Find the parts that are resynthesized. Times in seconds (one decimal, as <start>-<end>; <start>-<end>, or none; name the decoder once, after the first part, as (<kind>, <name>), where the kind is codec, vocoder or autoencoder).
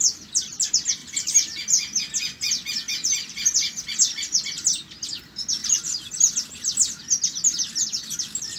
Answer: 1.0-2.0 (vocoder, BigVGAN v2); 5.6-6.1